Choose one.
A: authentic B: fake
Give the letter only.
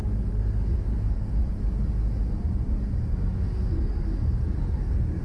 A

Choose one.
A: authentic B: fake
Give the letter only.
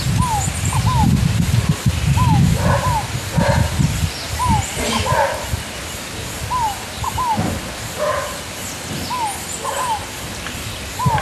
A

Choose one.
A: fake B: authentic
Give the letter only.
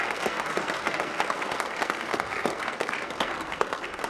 A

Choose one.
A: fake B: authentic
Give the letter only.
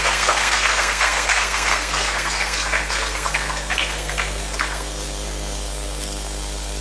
A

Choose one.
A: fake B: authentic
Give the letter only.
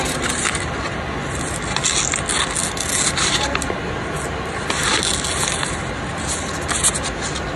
B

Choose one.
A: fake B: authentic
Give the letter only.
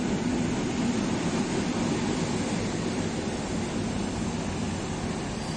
B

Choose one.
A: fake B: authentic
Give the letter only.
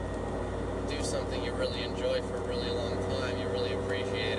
B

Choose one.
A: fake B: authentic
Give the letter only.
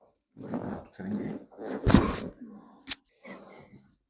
B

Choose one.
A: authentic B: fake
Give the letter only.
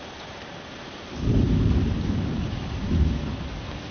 A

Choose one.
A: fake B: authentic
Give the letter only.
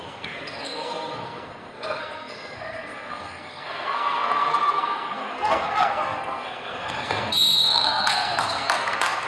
A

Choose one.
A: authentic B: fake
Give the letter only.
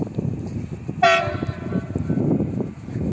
A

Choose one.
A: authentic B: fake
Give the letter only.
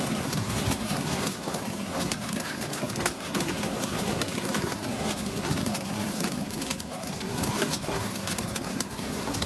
B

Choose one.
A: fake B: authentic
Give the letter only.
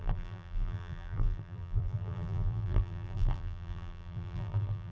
A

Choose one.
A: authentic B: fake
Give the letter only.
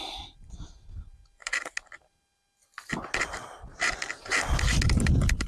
A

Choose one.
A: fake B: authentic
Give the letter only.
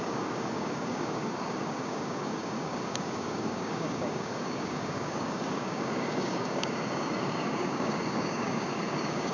A